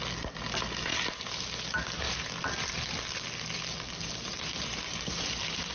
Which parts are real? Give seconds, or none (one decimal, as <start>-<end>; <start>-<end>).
0.0-5.7